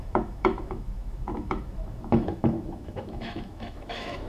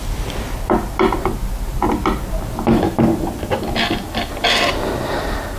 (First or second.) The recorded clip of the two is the second